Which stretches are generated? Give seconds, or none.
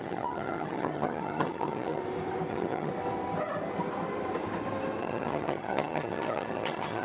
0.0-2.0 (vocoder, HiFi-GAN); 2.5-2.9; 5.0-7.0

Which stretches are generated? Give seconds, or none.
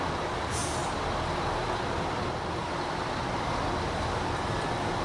none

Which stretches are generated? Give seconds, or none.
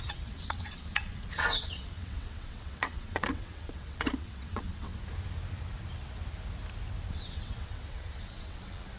0.0-4.9 (vocoder, WaveNeXt); 7.1-9.0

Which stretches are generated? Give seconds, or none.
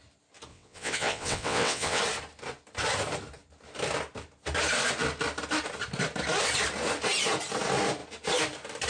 0.5-2.0 (vocoder, WaveNeXt)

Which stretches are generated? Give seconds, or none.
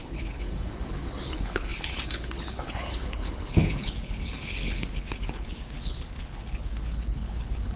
0.0-7.8 (codec, HILCodec)